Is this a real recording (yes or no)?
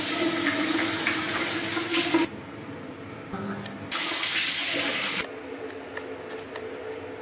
yes